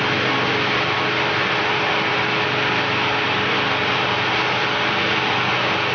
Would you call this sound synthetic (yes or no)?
no